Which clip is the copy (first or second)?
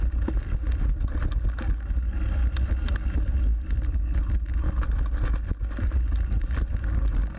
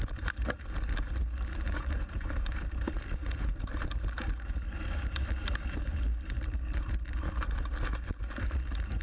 second